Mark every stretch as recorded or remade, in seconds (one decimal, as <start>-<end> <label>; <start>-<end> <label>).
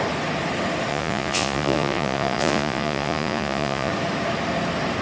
0.0-0.9 recorded; 0.9-3.9 remade; 3.9-5.0 recorded